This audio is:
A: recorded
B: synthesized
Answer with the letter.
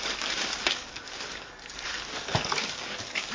B